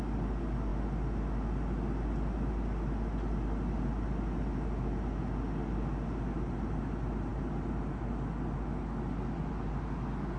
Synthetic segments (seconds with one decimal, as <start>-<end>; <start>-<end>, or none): none